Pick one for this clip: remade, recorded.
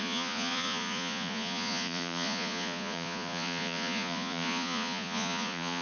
remade